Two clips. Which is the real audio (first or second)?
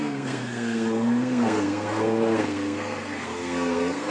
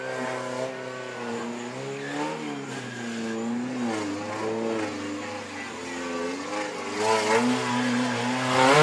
second